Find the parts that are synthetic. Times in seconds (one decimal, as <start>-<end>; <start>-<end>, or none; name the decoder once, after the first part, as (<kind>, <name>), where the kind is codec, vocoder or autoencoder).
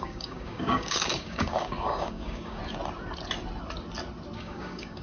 0.0-2.6 (codec, DAC); 4.4-5.0